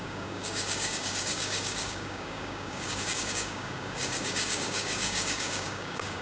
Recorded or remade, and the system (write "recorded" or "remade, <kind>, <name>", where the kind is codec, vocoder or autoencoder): remade, codec, DAC